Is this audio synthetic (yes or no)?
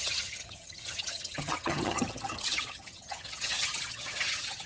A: yes